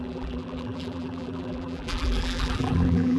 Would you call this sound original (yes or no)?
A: no